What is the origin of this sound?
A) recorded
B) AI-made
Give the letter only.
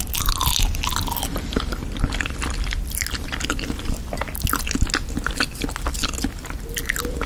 A